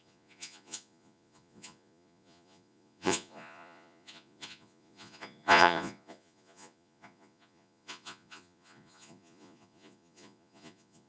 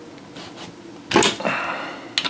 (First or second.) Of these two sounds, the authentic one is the second